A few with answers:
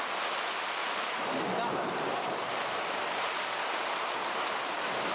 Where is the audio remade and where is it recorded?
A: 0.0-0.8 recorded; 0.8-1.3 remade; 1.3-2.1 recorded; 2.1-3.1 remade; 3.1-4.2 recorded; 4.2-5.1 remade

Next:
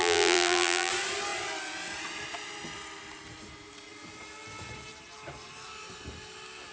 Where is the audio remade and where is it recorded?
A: 0.0-0.9 remade; 0.9-6.7 recorded

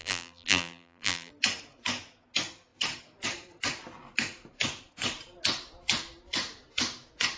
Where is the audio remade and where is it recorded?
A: 0.0-1.3 remade; 1.3-7.4 recorded

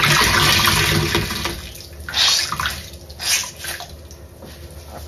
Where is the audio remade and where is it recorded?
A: 0.0-5.1 recorded

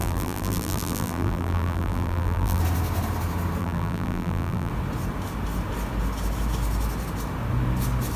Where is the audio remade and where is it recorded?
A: 0.0-2.6 remade; 2.6-3.6 recorded; 3.6-4.7 remade; 4.7-8.2 recorded

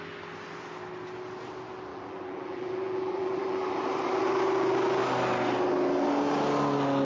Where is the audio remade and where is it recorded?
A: 0.0-1.9 recorded; 1.9-3.7 remade; 3.7-7.0 recorded

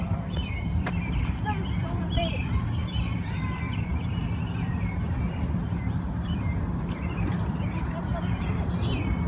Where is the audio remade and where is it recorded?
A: 0.0-3.9 remade; 3.9-5.3 recorded; 5.3-9.3 remade

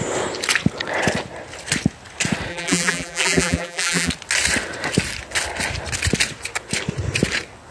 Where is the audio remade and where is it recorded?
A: 0.0-2.5 recorded; 2.5-4.1 remade; 4.1-7.7 recorded